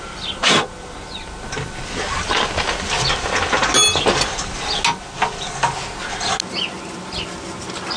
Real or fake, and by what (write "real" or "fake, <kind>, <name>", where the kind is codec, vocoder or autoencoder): real